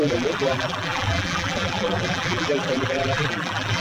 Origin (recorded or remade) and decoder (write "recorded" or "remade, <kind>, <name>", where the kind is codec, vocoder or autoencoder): remade, vocoder, BigVGAN v2